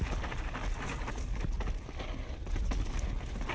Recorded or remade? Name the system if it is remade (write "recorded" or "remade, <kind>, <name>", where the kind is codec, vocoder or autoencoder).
recorded